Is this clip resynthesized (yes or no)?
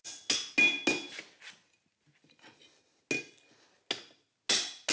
no